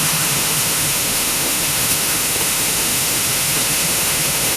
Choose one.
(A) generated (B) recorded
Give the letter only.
A